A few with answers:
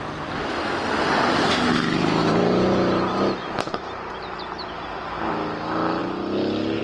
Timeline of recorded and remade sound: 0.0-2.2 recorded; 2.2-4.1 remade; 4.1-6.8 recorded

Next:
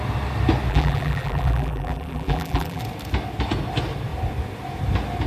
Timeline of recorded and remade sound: 0.0-0.7 recorded; 0.7-2.8 remade; 2.8-5.3 recorded